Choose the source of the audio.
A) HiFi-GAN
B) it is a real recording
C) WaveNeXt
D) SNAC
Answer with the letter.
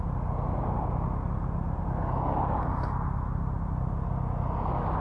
B